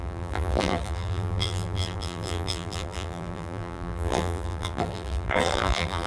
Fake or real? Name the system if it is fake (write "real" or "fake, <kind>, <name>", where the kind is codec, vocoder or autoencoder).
fake, vocoder, BigVGAN v2